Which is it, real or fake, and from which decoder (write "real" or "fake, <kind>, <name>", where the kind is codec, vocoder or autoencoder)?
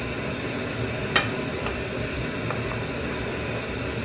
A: real